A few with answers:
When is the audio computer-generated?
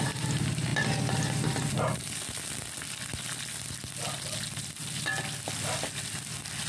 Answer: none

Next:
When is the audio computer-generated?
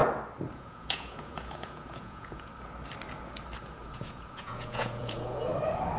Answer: 0.5-2.5 (vocoder, Vocos); 3.6-5.5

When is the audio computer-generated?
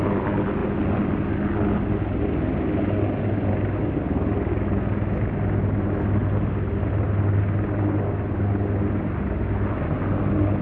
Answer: none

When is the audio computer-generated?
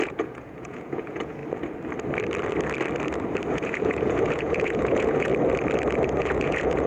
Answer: 0.0-1.4 (vocoder, Vocos); 3.5-5.3; 6.2-6.9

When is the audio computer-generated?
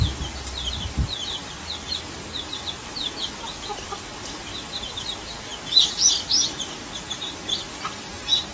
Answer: none